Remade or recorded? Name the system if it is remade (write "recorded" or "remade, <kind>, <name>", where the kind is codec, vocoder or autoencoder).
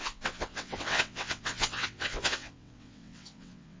remade, vocoder, WaveNeXt